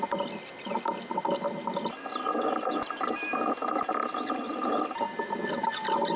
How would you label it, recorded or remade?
recorded